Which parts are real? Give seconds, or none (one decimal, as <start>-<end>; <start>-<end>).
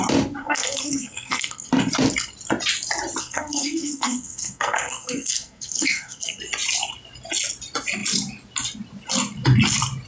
0.0-0.4; 1.7-3.2; 6.4-10.1